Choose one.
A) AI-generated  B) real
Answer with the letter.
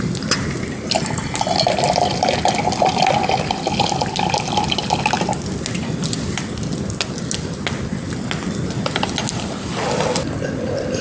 B